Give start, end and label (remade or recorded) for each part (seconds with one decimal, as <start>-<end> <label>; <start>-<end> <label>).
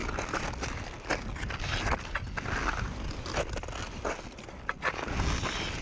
0.0-5.8 recorded